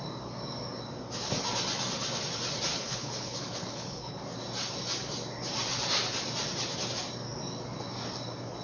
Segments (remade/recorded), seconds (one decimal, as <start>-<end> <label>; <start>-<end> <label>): 0.0-2.7 recorded; 2.7-4.2 remade; 4.2-8.6 recorded